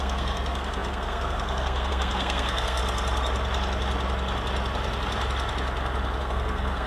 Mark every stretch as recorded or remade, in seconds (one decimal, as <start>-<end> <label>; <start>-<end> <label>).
0.0-2.8 remade; 2.8-6.2 recorded; 6.2-6.9 remade